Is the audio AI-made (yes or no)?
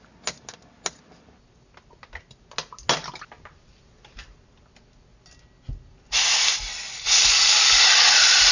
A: no